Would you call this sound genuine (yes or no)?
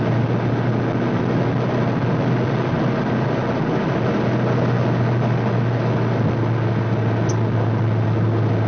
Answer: yes